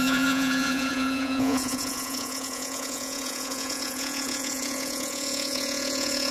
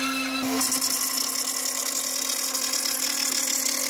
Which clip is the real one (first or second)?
second